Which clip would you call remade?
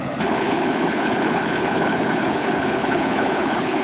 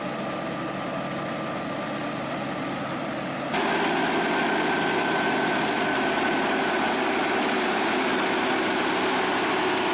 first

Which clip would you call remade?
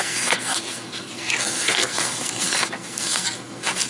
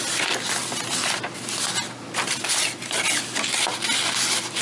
first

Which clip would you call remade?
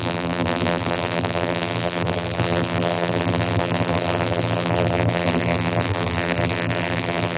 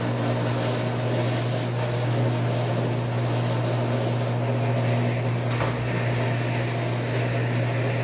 first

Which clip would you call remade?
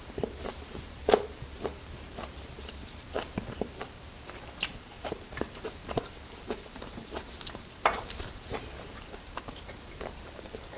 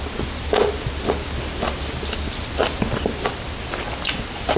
first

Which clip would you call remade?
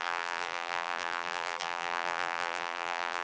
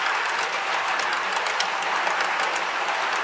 first